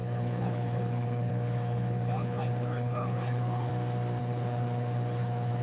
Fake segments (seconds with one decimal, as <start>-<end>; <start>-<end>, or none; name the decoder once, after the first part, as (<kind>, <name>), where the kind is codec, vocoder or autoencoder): 0.0-3.7 (codec, HILCodec); 4.2-5.6